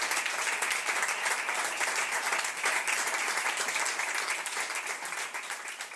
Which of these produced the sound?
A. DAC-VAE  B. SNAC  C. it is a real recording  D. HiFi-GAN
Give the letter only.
C